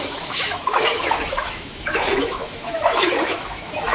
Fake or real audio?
fake